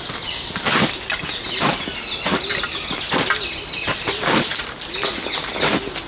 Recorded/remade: recorded